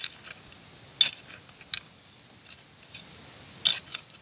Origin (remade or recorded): recorded